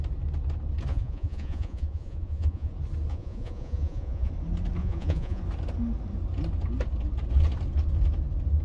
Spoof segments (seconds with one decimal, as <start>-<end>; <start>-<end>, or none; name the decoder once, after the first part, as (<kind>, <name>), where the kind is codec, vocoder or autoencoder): 0.9-2.7 (vocoder, Vocos); 3.1-4.3; 4.8-5.4